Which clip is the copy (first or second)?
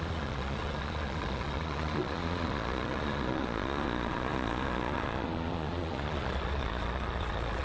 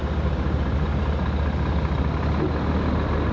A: first